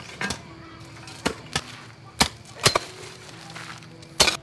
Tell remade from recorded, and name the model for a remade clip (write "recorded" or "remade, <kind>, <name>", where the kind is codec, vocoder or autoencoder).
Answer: recorded